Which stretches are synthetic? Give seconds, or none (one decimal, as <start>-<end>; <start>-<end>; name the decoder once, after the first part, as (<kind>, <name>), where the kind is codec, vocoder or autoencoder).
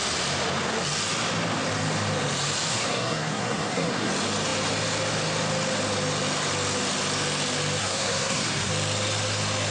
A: 2.7-4.1 (codec, SNAC); 7.8-8.7